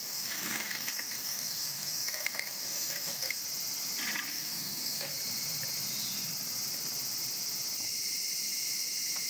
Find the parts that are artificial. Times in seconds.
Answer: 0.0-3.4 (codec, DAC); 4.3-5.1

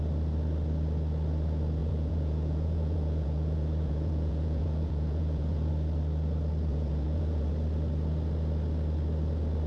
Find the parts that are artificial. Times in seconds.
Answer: 1.8-5.7 (vocoder, Vocos); 6.7-7.5

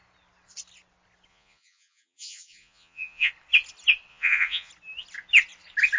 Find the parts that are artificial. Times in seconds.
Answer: 1.3-3.3 (vocoder, Vocos); 4.1-4.7

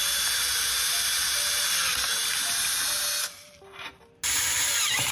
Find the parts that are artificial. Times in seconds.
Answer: none

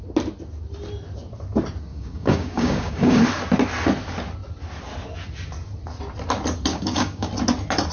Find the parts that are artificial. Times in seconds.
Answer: 1.9-3.2 (codec, DAC); 6.7-7.3